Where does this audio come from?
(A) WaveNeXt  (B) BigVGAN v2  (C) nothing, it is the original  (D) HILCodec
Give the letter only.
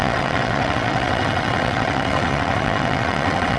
A